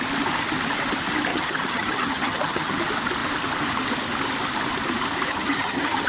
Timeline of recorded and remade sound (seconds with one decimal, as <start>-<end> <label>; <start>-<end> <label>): 0.0-1.3 recorded; 1.3-2.8 remade; 2.8-5.3 recorded; 5.3-6.1 remade